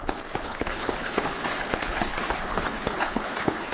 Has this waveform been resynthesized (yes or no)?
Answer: yes